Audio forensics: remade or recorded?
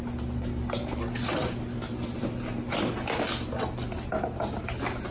recorded